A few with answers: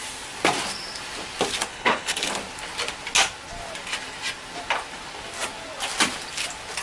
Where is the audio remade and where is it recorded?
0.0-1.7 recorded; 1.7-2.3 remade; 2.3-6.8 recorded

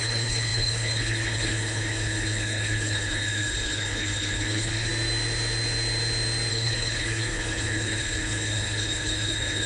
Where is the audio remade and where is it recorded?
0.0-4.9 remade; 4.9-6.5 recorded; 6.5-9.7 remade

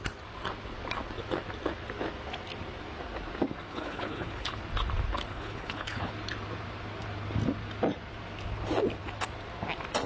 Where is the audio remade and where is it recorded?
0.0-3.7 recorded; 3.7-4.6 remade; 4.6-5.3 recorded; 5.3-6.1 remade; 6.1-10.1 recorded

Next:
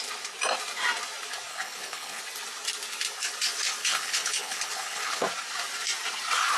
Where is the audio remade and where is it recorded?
0.0-1.5 recorded; 1.5-2.2 remade; 2.2-3.8 recorded; 3.8-5.2 remade; 5.2-6.6 recorded